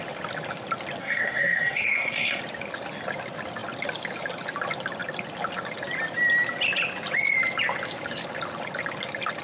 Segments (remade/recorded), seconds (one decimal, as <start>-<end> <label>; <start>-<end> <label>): 0.0-1.0 recorded; 1.0-2.4 remade; 2.4-9.4 recorded